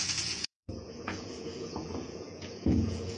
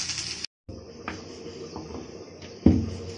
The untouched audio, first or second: second